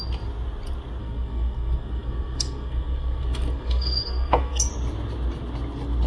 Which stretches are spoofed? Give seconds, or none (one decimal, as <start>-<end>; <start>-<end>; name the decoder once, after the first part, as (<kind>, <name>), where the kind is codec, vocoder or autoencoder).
1.0-4.7 (codec, SNAC)